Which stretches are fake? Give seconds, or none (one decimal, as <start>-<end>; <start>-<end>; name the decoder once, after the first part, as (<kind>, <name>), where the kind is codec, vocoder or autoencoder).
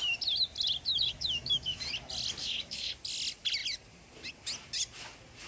0.9-1.9 (autoencoder, DAC-VAE); 2.4-2.9